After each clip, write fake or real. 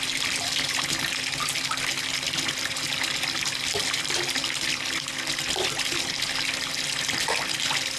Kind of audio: real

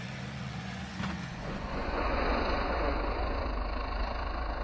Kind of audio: fake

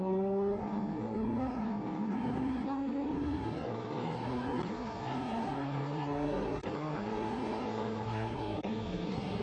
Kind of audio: fake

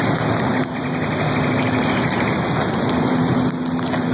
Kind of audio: real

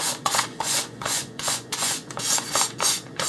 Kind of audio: fake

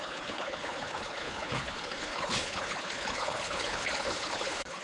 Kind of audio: fake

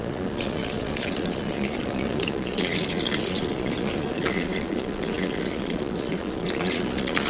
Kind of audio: fake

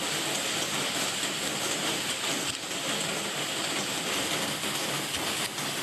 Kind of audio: real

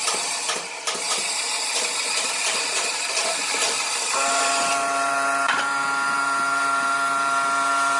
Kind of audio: fake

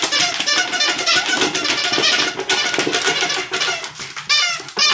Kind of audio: real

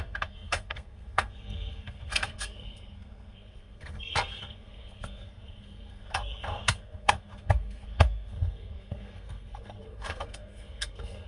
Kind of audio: fake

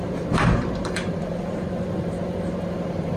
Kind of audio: fake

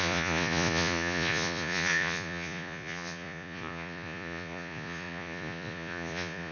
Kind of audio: fake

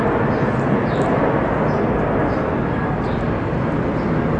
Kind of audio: real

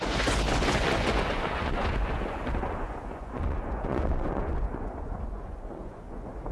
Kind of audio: fake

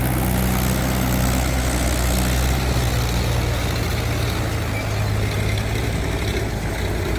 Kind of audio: real